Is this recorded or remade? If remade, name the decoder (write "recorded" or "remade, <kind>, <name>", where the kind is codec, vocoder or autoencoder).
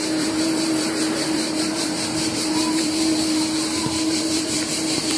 remade, vocoder, BigVGAN v2